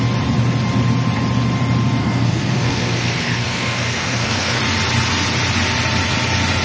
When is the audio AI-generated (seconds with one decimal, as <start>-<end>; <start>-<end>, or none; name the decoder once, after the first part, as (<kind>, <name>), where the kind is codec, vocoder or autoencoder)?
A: 2.0-4.6 (codec, SNAC)

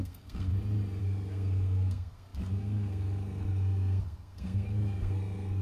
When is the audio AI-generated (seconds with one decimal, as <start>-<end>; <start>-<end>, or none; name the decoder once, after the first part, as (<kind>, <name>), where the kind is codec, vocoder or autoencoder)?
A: 0.0-0.5 (codec, SNAC); 1.0-5.6